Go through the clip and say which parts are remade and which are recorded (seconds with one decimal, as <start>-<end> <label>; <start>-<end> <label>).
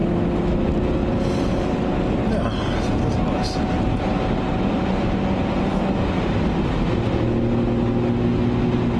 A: 0.0-9.0 recorded